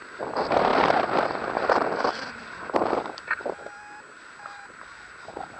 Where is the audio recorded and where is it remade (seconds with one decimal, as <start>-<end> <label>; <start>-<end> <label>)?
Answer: 0.0-5.6 remade